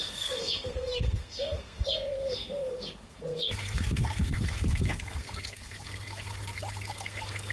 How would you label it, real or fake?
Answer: fake